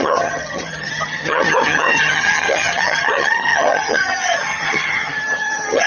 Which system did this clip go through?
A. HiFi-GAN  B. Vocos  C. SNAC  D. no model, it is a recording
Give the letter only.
A